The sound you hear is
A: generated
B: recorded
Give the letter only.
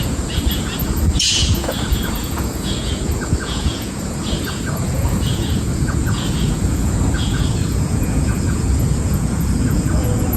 A